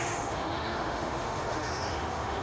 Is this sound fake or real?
fake